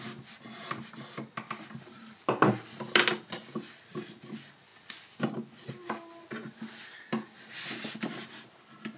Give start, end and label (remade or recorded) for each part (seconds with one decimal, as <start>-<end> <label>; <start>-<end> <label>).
0.0-9.0 recorded